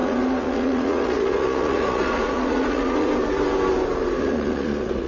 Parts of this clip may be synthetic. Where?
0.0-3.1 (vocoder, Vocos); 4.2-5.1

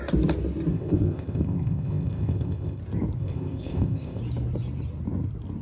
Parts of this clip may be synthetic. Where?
0.7-2.8 (codec, ZipCodec); 3.2-4.2